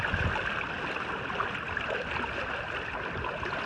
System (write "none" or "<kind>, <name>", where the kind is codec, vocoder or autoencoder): none